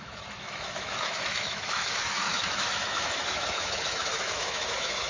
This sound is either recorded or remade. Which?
remade